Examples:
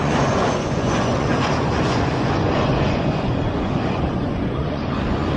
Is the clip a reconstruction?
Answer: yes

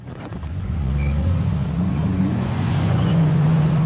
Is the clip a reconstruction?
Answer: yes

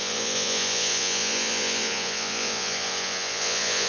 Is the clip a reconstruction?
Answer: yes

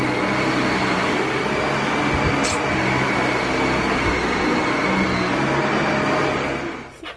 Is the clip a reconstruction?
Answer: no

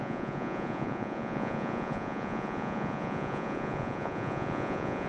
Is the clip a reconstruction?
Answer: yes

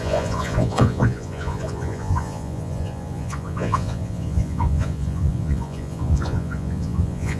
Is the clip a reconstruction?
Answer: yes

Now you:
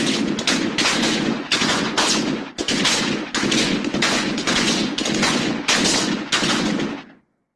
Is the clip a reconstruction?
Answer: yes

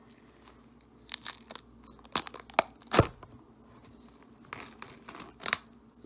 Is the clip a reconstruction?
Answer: no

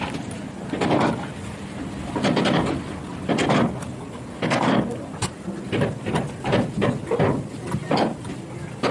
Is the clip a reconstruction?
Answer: no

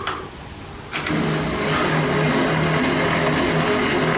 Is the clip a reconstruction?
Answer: no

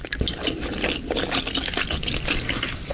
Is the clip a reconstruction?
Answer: no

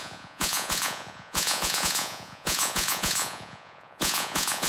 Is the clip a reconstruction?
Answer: yes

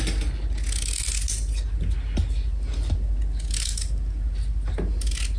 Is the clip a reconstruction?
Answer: no